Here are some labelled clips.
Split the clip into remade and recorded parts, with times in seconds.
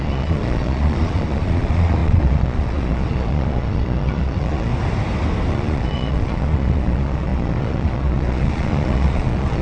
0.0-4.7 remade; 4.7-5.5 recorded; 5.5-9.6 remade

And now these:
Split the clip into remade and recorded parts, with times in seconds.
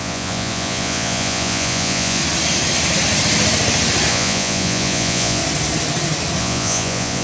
0.0-2.2 remade; 2.2-4.1 recorded; 4.1-5.4 remade; 5.4-6.4 recorded; 6.4-7.2 remade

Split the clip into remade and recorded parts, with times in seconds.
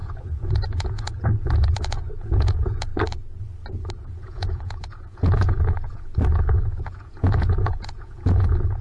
0.0-2.9 remade; 2.9-3.9 recorded; 3.9-8.8 remade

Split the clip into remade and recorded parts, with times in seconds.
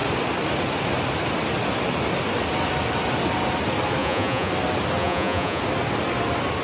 0.0-4.0 recorded; 4.0-4.5 remade; 4.5-5.0 recorded; 5.0-5.6 remade; 5.6-6.6 recorded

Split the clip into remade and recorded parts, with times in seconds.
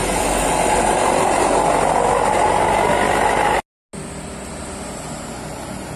0.0-6.0 recorded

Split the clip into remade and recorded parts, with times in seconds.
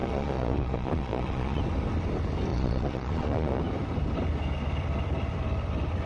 0.0-1.6 remade; 1.6-2.5 recorded; 2.5-3.6 remade; 3.6-6.1 recorded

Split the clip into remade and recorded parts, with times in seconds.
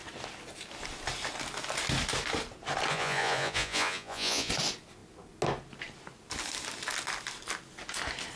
0.0-2.9 recorded; 2.9-4.5 remade; 4.5-8.4 recorded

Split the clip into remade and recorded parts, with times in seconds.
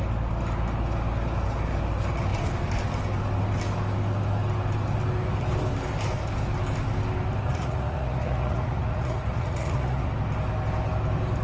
0.0-7.5 recorded; 7.5-10.1 remade; 10.1-11.4 recorded